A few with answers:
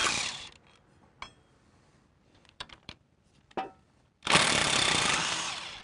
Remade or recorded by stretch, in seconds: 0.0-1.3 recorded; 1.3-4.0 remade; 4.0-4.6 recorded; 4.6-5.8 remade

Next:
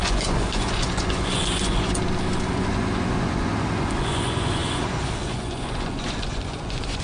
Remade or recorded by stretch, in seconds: 0.0-2.0 remade; 2.0-2.5 recorded; 2.5-7.0 remade

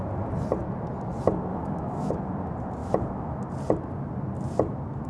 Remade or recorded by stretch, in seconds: 0.0-1.5 recorded; 1.5-2.1 remade; 2.1-2.8 recorded; 2.8-3.4 remade; 3.4-5.1 recorded

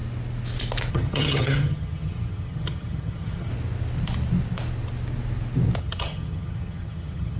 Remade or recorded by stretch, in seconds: 0.0-0.9 recorded; 0.9-3.5 remade; 3.5-5.8 recorded; 5.8-7.4 remade

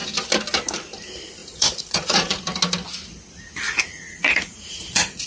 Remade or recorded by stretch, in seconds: 0.0-1.4 recorded; 1.4-2.4 remade; 2.4-3.9 recorded; 3.9-5.3 remade

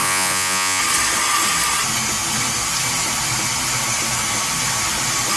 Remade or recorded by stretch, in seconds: 0.0-0.8 remade; 0.8-5.4 recorded

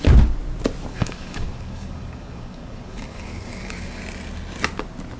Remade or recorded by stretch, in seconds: 0.0-0.9 recorded; 0.9-4.0 remade; 4.0-5.2 recorded

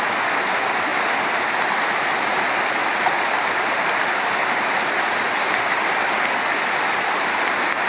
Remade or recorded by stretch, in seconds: 0.0-7.9 recorded